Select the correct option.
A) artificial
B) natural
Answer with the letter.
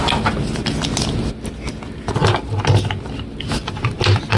B